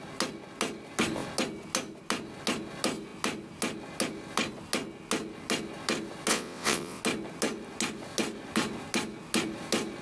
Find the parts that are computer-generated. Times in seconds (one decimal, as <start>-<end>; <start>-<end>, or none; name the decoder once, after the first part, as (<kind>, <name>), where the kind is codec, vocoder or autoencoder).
6.3-7.0 (vocoder, WaveNeXt)

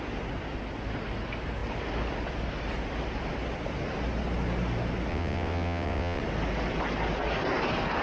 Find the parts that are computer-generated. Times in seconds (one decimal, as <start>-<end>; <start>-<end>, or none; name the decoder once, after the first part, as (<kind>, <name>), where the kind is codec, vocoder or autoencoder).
5.1-6.2 (vocoder, WaveNeXt)

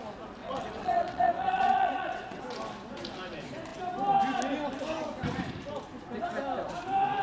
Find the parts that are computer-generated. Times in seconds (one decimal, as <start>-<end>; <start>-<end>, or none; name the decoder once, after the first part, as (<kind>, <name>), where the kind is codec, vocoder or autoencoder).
0.4-2.4 (vocoder, WaveNeXt)

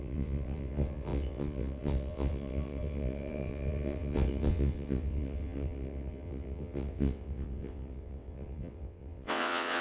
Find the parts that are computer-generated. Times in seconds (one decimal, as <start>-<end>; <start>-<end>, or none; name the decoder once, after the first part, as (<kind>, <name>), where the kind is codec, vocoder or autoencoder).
0.0-9.8 (vocoder, WaveNeXt)

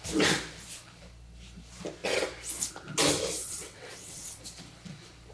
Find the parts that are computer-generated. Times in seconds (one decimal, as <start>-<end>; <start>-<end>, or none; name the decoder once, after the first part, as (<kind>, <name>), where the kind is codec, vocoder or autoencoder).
3.4-4.4 (vocoder, WaveNeXt)

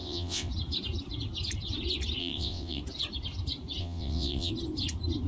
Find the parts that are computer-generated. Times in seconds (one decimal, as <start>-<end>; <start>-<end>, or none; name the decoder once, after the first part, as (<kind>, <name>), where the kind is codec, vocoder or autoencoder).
0.0-0.5 (vocoder, WaveNeXt); 2.2-2.8; 3.8-4.5

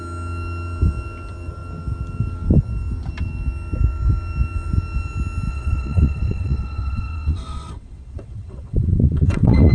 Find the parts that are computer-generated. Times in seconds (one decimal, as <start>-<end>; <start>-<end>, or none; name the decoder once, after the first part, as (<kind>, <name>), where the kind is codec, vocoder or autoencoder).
5.5-9.7 (vocoder, WaveNeXt)

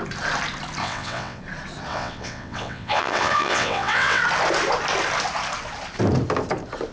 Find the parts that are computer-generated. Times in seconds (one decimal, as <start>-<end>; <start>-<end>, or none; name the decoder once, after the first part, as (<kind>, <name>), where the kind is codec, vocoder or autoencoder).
0.8-1.4 (vocoder, WaveNeXt); 1.9-4.2